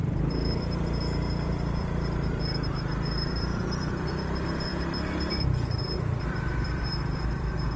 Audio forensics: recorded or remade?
remade